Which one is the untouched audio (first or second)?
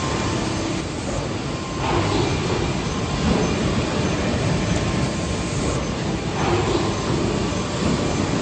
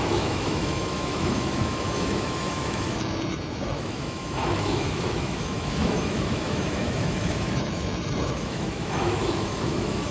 first